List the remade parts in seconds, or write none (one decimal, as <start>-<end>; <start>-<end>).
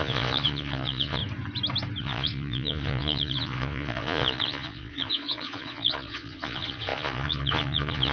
0.0-1.2; 2.0-8.1